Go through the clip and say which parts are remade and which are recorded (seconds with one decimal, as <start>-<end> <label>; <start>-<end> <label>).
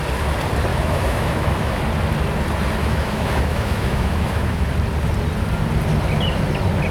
0.0-0.7 recorded; 0.7-1.8 remade; 1.8-2.8 recorded; 2.8-4.7 remade; 4.7-6.9 recorded